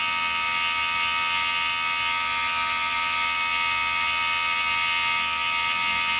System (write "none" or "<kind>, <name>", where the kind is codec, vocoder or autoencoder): none